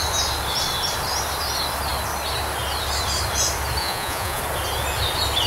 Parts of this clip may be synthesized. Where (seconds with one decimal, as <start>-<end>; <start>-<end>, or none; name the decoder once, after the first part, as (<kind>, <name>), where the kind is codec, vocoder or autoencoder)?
3.8-4.4 (vocoder, Vocos)